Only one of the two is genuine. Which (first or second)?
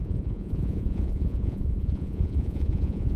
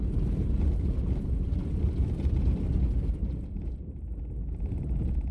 second